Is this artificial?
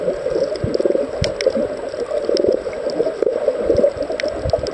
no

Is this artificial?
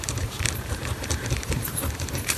yes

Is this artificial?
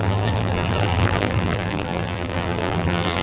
yes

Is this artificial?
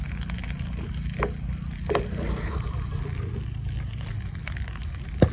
no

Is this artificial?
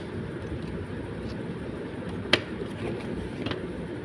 no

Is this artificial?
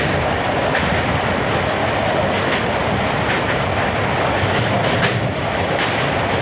yes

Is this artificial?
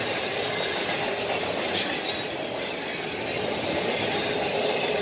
no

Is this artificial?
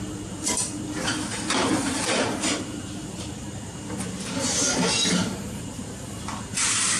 yes